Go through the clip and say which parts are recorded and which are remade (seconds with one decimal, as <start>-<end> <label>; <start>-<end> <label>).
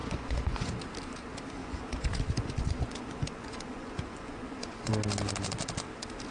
0.0-0.7 remade; 0.7-1.6 recorded; 1.6-4.9 remade; 4.9-6.3 recorded